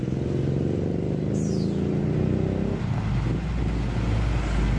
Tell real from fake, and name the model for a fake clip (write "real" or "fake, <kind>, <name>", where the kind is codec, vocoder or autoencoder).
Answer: real